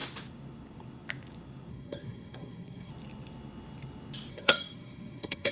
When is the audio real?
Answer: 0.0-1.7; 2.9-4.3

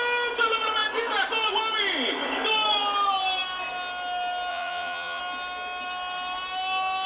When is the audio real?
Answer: 0.0-4.5; 5.2-7.1

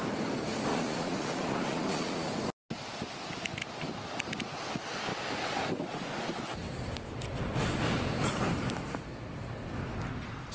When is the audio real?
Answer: 0.0-0.7; 2.3-10.5

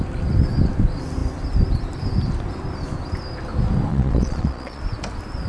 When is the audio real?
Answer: 0.0-3.9; 4.8-5.5

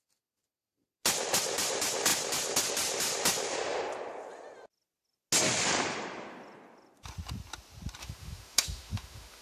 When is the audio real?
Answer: 0.0-8.0

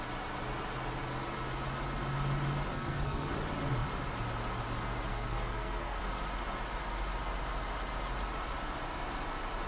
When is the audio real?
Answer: 0.0-2.7; 3.3-5.1; 6.0-9.7

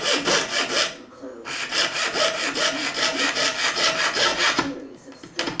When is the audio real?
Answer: 0.0-5.6